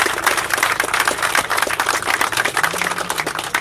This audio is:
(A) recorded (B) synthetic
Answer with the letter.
A